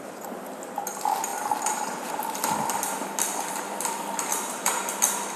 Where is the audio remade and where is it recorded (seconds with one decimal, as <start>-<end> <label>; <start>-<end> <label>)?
0.0-4.3 recorded; 4.3-4.9 remade; 4.9-5.4 recorded